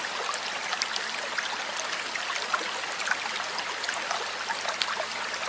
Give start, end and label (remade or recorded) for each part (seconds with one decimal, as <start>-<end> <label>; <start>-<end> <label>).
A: 0.0-5.5 recorded

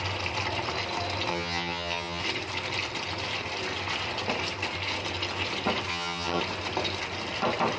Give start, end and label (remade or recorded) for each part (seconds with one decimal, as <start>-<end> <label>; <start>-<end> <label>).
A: 0.0-1.3 recorded; 1.3-2.2 remade; 2.2-5.9 recorded; 5.9-6.4 remade; 6.4-7.8 recorded

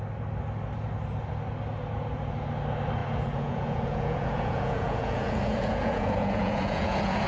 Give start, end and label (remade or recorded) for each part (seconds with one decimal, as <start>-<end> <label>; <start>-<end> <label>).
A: 0.0-3.0 recorded; 3.0-7.3 remade

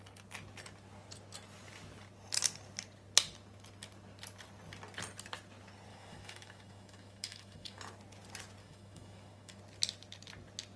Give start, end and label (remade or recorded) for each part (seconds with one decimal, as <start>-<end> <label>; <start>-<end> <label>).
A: 0.0-5.9 recorded; 5.9-7.8 remade; 7.8-8.6 recorded; 8.6-9.6 remade; 9.6-10.8 recorded